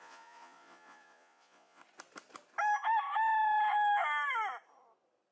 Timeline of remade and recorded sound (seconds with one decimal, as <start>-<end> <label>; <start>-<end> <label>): 0.0-1.8 remade; 1.8-5.3 recorded